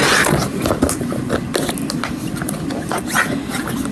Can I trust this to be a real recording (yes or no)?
yes